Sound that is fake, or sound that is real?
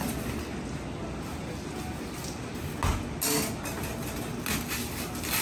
real